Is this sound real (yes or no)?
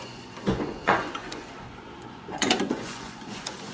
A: no